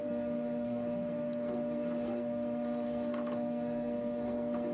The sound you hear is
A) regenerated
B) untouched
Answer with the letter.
A